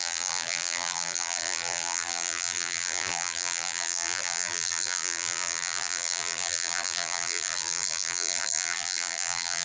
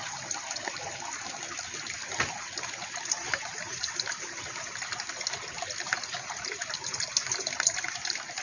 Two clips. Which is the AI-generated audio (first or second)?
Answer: first